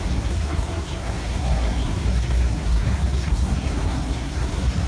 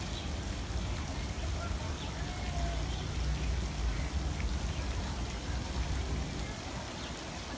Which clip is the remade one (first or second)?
first